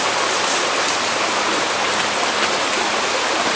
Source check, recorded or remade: recorded